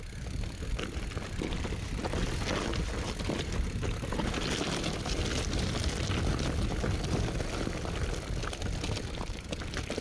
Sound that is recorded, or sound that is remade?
recorded